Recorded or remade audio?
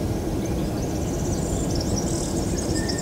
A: recorded